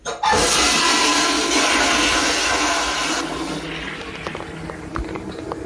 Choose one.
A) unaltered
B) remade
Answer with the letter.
A